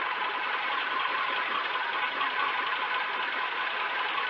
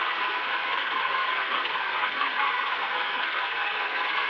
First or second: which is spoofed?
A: second